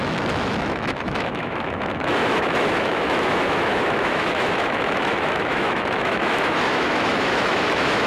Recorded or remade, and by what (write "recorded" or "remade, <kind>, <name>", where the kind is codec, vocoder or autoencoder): remade, autoencoder, DAC-VAE